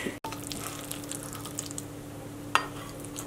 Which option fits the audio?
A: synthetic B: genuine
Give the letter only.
B